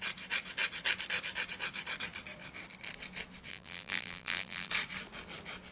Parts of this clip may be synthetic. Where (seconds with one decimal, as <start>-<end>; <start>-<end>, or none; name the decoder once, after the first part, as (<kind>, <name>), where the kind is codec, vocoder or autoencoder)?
3.5-4.7 (vocoder, BigVGAN v2)